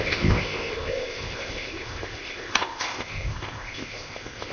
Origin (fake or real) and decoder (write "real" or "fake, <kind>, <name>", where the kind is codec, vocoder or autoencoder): fake, codec, ZipCodec